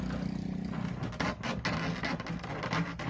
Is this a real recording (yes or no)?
yes